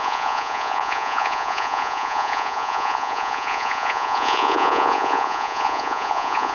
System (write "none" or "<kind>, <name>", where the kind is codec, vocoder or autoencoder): vocoder, Vocos